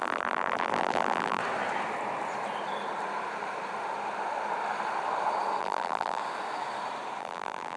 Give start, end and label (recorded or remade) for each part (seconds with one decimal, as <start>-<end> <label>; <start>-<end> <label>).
0.0-1.4 remade; 1.4-5.6 recorded; 5.6-6.2 remade; 6.2-7.2 recorded; 7.2-7.8 remade